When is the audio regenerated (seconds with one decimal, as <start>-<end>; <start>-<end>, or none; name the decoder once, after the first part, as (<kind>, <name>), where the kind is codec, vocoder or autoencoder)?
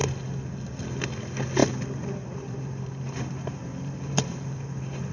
1.6-5.1 (vocoder, BigVGAN v2)